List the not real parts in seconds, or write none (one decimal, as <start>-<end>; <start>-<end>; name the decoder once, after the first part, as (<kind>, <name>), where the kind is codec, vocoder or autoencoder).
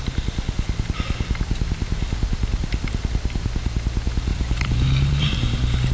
4.3-5.9 (vocoder, BigVGAN v2)